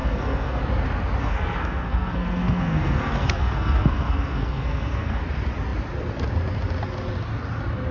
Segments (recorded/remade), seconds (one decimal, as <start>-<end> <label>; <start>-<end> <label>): 0.0-0.6 remade; 0.6-1.2 recorded; 1.2-5.2 remade; 5.2-7.9 recorded